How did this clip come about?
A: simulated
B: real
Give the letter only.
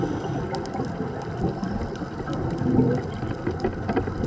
B